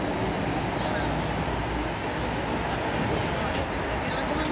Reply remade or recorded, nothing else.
recorded